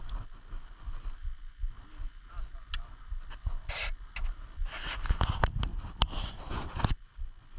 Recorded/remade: recorded